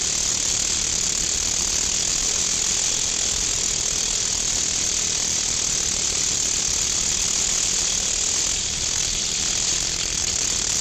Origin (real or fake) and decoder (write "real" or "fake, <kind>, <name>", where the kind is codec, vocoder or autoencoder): real